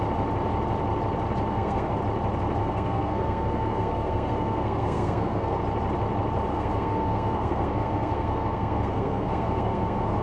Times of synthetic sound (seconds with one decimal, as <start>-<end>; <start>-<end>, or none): 1.5-2.0; 2.6-5.6; 6.5-10.2